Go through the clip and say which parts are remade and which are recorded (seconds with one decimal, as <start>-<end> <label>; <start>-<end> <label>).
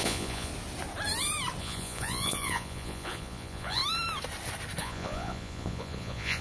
0.0-0.5 remade; 0.5-1.6 recorded; 1.6-3.8 remade; 3.8-4.8 recorded; 4.8-6.4 remade